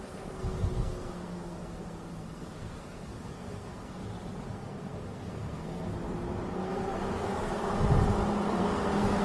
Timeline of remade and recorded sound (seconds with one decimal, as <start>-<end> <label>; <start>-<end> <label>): 0.0-4.0 remade; 4.0-4.5 recorded; 4.5-5.9 remade; 5.9-6.5 recorded; 6.5-7.7 remade; 7.7-8.5 recorded; 8.5-9.2 remade